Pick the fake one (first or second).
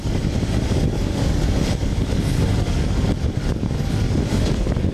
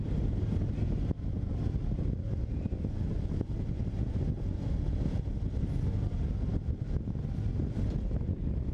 first